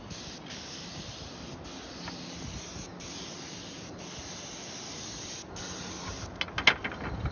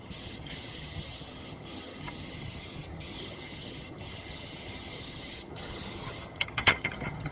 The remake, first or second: second